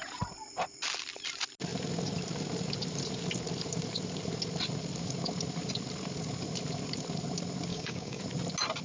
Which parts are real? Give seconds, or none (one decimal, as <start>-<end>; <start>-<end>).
0.0-7.7; 8.2-8.8